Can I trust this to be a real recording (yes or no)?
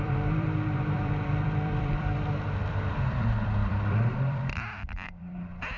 no